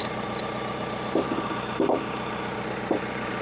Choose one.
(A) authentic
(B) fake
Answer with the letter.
A